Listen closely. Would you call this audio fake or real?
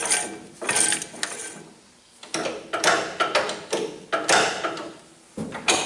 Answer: real